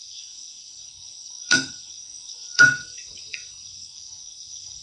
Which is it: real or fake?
fake